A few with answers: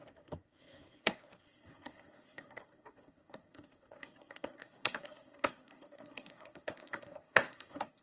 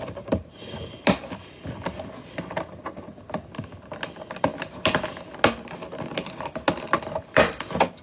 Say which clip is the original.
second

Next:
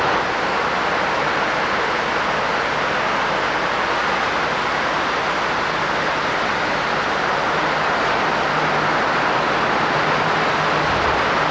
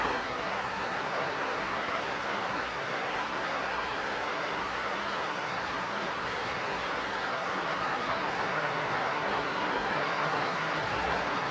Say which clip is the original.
first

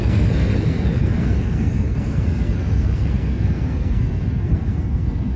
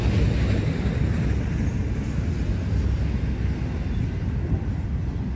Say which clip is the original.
second